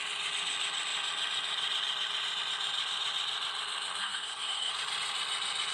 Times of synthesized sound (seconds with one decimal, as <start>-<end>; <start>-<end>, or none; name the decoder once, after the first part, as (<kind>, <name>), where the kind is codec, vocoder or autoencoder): 4.0-4.7 (codec, SNAC)